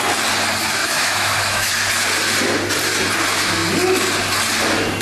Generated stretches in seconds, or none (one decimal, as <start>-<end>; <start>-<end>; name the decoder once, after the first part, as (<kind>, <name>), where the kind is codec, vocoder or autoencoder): 0.8-1.7 (autoencoder, DAC-VAE)